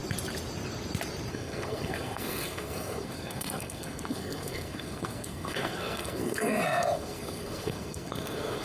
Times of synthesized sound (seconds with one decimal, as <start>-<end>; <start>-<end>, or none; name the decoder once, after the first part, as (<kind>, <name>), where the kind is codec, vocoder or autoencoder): 1.3-8.6 (codec, SNAC)